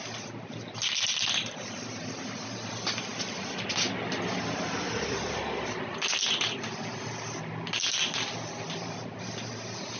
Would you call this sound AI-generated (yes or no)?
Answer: no